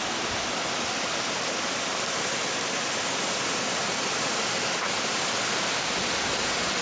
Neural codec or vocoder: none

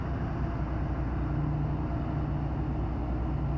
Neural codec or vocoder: none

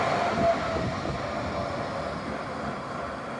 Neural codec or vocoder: none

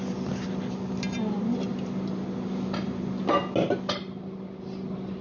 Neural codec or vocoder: none